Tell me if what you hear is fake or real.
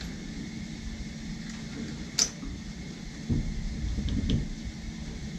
real